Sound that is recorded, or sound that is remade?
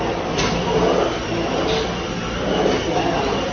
recorded